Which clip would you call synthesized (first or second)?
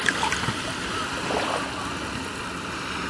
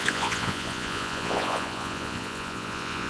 second